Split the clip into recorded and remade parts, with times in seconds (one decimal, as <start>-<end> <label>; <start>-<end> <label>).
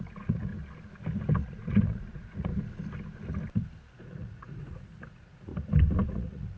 0.0-0.5 remade; 0.5-1.4 recorded; 1.4-2.5 remade; 2.5-3.9 recorded; 3.9-5.5 remade; 5.5-6.1 recorded; 6.1-6.6 remade